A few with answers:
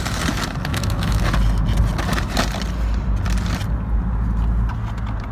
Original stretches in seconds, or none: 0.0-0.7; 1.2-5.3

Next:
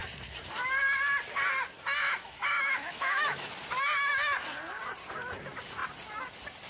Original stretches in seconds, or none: 0.0-2.0; 3.5-6.7

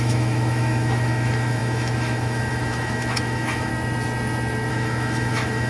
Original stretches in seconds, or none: 3.7-4.7

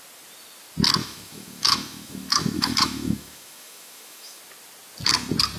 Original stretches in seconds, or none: 0.0-1.0; 4.4-5.6

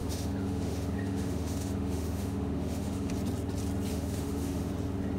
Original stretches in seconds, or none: 3.1-3.9; 4.7-5.2

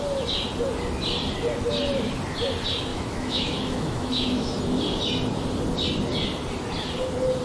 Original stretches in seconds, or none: 0.0-2.9; 4.6-7.4

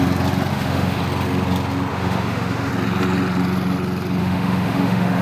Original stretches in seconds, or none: 0.0-0.5; 1.0-1.9; 2.7-4.2

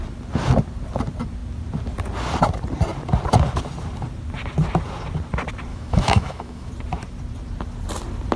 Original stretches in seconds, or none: 0.0-5.7; 6.7-8.4